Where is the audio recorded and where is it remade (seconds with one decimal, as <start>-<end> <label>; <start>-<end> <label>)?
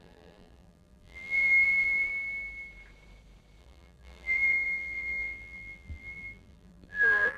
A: 0.0-2.1 remade; 2.1-3.6 recorded; 3.6-7.4 remade